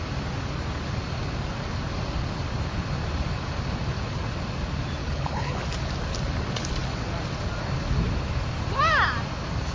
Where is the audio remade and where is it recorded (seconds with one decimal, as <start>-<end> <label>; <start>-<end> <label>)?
0.0-5.0 recorded; 5.0-5.6 remade; 5.6-9.7 recorded